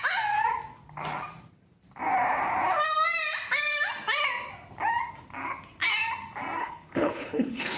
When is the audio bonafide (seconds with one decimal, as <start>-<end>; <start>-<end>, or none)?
0.0-6.6